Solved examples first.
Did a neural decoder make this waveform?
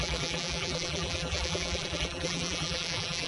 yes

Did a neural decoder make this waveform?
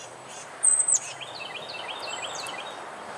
yes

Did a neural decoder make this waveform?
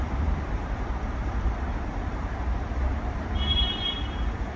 yes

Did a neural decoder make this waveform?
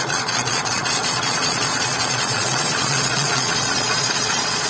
yes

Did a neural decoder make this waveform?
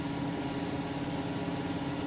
no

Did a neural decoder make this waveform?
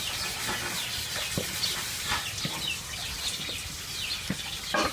no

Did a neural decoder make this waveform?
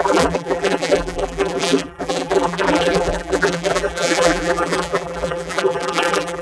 yes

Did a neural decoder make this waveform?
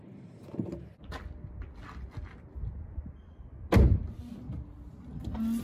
no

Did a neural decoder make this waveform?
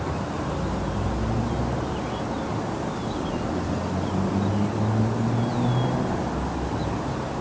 no